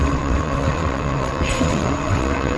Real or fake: fake